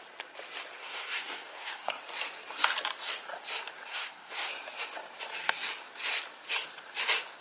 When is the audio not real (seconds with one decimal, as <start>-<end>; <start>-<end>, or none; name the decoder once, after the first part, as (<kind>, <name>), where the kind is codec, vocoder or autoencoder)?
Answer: 0.8-2.0 (codec, SNAC); 3.9-4.5